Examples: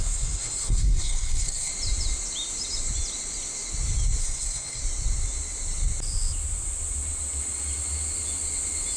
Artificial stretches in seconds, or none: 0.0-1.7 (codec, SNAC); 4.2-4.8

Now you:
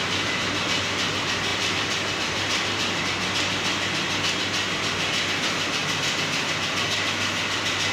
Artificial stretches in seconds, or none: 1.5-3.0 (vocoder, BigVGAN v2); 5.8-6.5

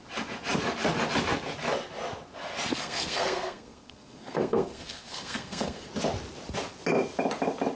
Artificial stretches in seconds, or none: 2.7-5.9 (codec, SNAC)

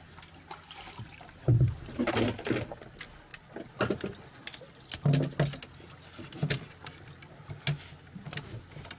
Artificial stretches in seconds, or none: 1.4-2.1 (vocoder, BigVGAN v2)

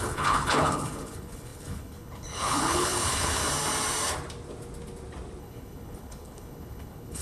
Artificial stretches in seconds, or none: 0.0-3.4 (codec, HILCodec); 5.4-7.2